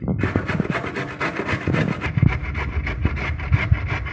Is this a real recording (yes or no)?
yes